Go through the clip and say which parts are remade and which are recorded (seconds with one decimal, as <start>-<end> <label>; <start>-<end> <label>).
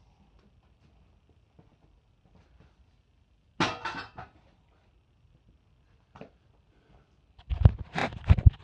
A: 0.0-8.6 recorded